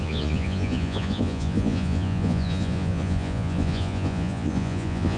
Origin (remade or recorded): remade